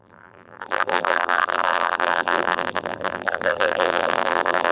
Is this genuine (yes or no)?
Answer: no